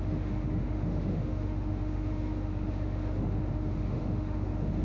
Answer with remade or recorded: remade